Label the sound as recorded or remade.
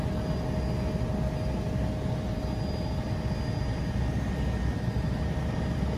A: recorded